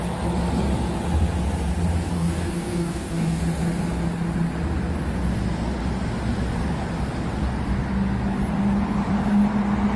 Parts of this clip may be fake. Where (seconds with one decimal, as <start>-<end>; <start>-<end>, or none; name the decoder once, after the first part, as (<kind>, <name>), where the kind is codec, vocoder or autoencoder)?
2.1-3.4 (codec, DAC)